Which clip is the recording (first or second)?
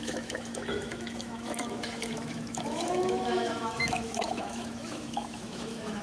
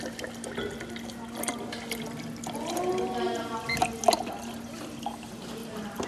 second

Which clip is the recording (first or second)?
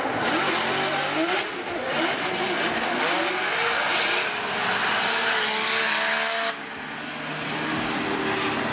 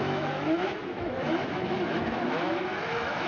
first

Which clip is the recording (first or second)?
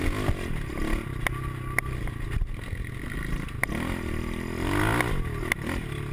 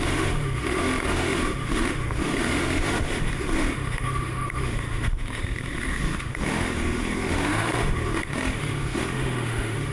first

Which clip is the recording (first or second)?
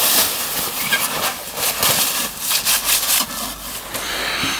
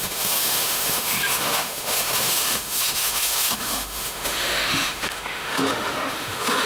first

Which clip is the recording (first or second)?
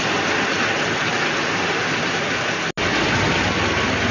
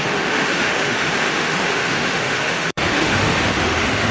first